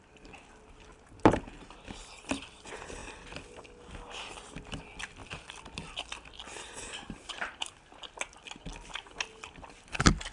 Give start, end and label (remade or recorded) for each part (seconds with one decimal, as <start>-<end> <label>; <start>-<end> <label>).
0.0-0.9 recorded; 0.9-1.4 remade; 1.4-10.3 recorded